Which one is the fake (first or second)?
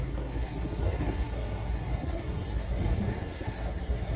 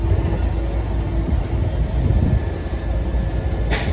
first